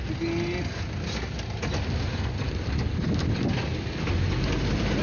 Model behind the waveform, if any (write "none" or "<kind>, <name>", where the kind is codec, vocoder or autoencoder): none